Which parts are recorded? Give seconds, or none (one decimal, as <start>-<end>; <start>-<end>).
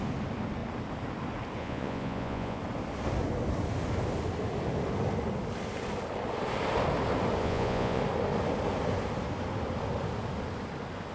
0.0-1.6; 2.6-7.4; 8.0-11.1